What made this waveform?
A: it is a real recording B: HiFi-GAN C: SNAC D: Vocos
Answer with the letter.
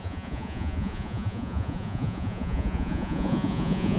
D